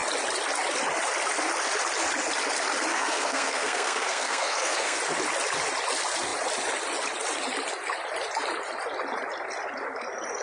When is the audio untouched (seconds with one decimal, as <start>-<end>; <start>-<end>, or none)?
0.0-2.9; 5.0-10.4